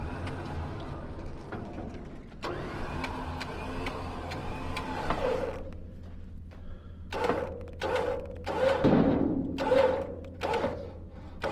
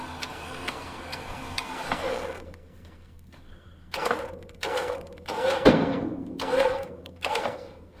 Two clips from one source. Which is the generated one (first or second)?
second